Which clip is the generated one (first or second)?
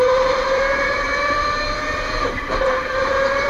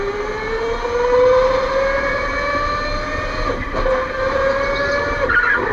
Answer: first